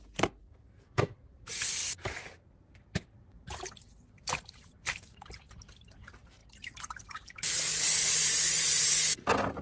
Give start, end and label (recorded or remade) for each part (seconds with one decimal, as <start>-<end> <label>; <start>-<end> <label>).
0.0-0.4 recorded; 0.4-1.2 remade; 1.2-9.6 recorded

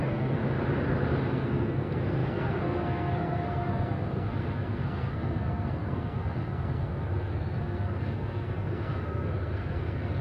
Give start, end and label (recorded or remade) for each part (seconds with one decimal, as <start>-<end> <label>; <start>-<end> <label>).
0.0-0.4 remade; 0.4-1.3 recorded; 1.3-10.2 remade